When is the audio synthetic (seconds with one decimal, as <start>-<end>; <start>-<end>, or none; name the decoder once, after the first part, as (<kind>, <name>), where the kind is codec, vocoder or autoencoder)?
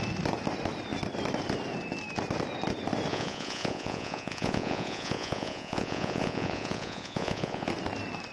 3.1-7.7 (vocoder, Vocos)